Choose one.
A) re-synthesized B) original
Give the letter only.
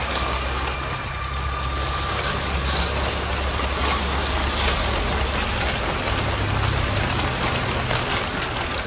B